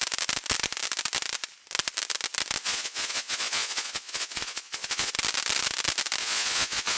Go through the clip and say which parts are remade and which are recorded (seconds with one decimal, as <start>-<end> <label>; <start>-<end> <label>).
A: 0.0-2.6 recorded; 2.6-5.1 remade; 5.1-6.2 recorded; 6.2-7.0 remade